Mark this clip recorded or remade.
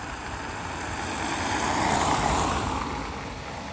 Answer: remade